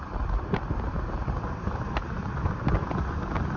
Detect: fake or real real